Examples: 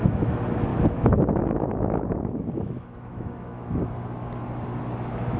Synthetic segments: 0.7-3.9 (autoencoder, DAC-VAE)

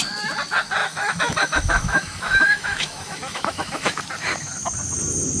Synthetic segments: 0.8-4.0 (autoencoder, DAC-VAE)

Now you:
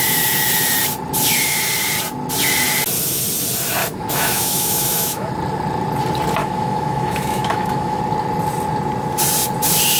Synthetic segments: 3.8-5.3 (autoencoder, DAC-VAE); 6.4-8.0